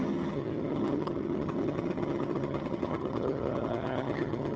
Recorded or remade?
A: remade